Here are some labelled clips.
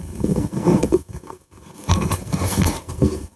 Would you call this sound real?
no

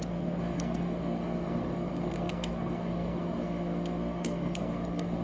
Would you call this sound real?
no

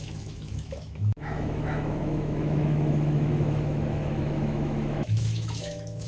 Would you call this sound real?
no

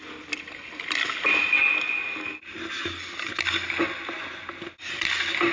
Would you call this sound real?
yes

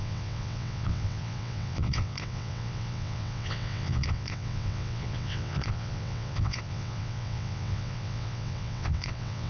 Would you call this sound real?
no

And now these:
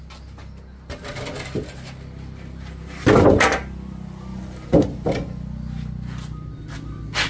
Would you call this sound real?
yes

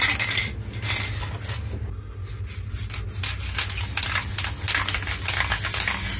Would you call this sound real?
yes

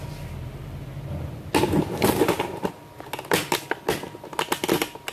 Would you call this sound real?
yes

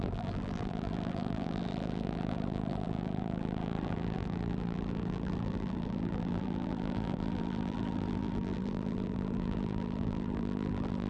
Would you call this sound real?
no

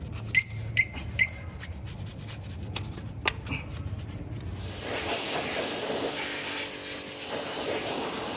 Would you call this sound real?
yes